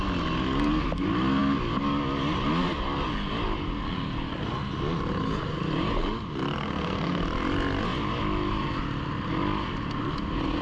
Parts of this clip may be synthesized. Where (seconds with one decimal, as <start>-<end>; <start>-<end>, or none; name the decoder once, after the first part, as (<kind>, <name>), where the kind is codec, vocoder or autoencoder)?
6.6-7.2 (codec, SNAC)